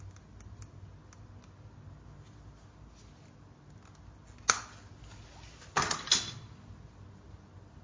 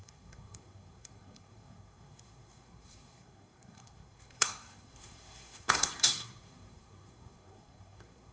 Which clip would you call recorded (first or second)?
first